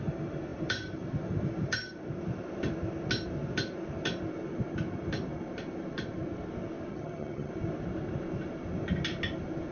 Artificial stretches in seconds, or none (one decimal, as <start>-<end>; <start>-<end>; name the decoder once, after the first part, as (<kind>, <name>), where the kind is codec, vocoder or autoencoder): 6.9-7.5 (vocoder, HiFi-GAN)